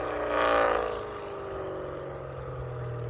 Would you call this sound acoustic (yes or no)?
yes